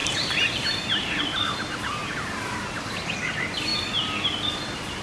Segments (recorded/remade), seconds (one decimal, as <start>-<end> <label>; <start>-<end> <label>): 0.0-1.2 remade; 1.2-2.0 recorded; 2.0-2.9 remade; 2.9-5.0 recorded